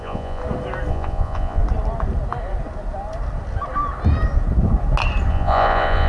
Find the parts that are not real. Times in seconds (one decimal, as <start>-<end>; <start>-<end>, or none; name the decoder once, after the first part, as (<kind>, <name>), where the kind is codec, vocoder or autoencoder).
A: 0.0-0.4 (vocoder, Vocos); 0.9-1.6; 5.3-6.1